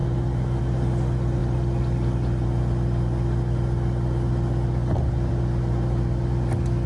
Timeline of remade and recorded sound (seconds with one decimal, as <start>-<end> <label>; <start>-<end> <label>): 0.0-6.9 recorded